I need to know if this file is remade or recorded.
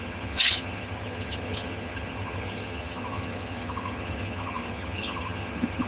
remade